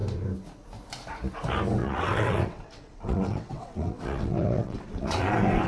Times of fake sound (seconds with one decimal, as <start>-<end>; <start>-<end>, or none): 1.8-5.2